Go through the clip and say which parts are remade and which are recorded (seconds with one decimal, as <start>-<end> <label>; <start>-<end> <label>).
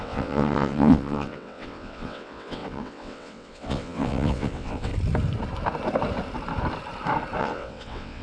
0.0-4.9 remade; 4.9-7.4 recorded; 7.4-8.2 remade